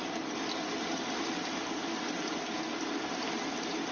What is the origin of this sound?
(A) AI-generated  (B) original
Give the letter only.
B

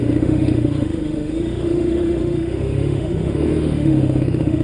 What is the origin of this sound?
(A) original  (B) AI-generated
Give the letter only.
B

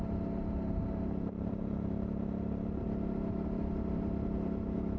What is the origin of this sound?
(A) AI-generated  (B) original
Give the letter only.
A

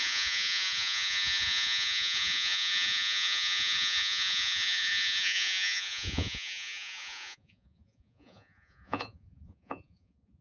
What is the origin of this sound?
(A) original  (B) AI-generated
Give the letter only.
B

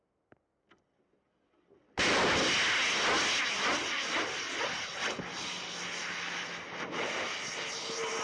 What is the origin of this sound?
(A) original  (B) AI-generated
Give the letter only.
A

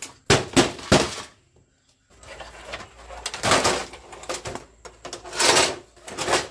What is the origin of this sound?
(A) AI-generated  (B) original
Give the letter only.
B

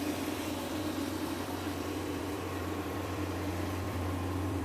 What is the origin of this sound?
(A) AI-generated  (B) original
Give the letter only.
A